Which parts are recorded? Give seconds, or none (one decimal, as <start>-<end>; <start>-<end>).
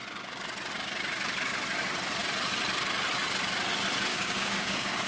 0.0-4.1